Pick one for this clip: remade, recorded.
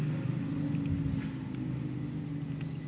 recorded